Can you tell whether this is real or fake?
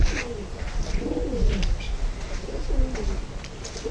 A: real